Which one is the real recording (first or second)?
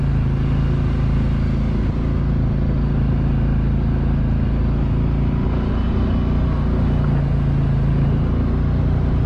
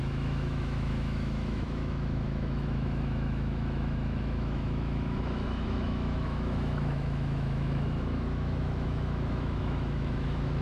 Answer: first